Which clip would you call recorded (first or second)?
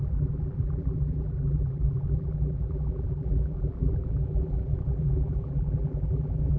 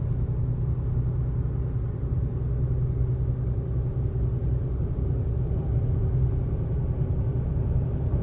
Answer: second